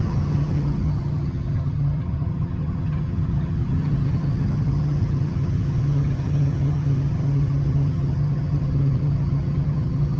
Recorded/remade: remade